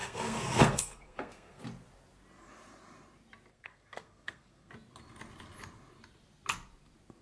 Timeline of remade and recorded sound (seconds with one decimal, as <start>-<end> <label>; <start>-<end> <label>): 0.0-1.6 remade; 1.6-3.5 recorded; 3.5-4.7 remade; 4.7-7.2 recorded